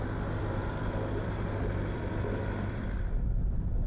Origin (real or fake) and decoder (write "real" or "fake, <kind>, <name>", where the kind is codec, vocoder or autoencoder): fake, vocoder, BigVGAN v2